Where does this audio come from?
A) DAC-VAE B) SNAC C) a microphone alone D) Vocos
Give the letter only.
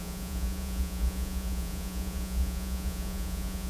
D